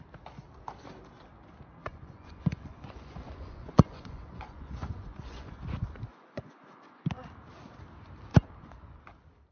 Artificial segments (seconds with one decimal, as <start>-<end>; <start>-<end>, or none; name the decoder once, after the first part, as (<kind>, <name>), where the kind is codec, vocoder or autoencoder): 1.8-5.6 (vocoder, Vocos); 6.1-7.0; 8.3-9.0